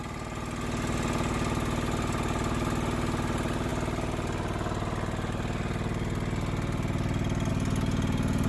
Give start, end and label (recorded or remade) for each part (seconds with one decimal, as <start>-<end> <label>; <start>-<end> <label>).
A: 0.0-8.5 recorded